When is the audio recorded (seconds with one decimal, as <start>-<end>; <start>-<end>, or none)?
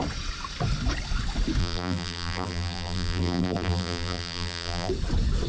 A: 0.0-1.6; 4.9-5.5